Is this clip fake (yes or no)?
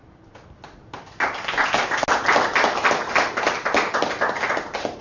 no